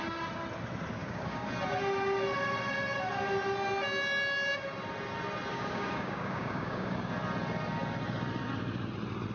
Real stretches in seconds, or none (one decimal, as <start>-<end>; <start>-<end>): 0.0-1.0; 1.5-5.5; 6.9-9.3